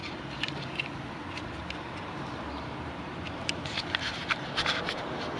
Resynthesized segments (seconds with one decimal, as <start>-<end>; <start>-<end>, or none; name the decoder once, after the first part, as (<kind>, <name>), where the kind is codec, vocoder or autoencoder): 0.0-5.4 (vocoder, BigVGAN v2)